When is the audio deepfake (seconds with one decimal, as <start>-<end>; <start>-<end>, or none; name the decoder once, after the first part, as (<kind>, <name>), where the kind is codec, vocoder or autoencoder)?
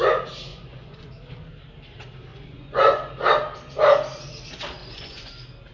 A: 0.5-1.1 (vocoder, Vocos); 2.3-3.1; 4.8-5.3